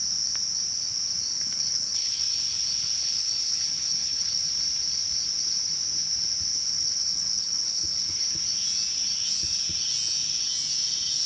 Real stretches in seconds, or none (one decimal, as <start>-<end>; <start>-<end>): 0.0-1.3; 2.2-3.0; 4.5-6.5; 8.4-11.3